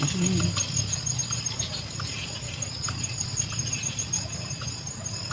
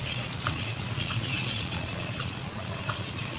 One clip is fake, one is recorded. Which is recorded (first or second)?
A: first